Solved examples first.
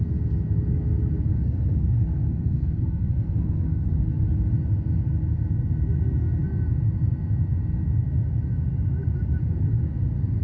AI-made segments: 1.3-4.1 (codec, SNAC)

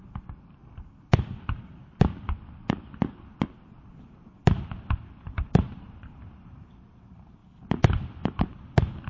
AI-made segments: 0.0-0.6 (vocoder, BigVGAN v2); 4.8-7.4; 8.3-9.1

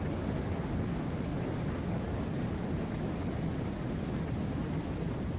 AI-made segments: none

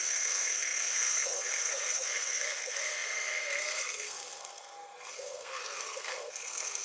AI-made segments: 0.0-6.8 (codec, SNAC)

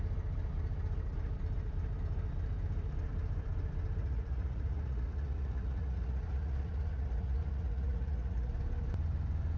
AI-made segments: 4.0-8.5 (vocoder, Vocos)

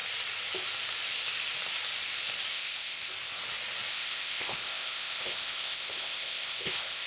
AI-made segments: 2.5-3.1 (codec, ZipCodec); 3.9-7.1

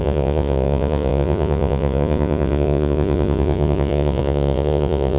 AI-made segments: 0.0-5.2 (vocoder, Vocos)

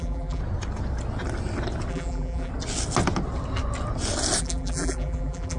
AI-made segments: 0.0-0.4 (vocoder, BigVGAN v2); 1.9-2.5; 4.4-5.6